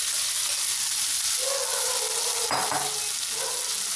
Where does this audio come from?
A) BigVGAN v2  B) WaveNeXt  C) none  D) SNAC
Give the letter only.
C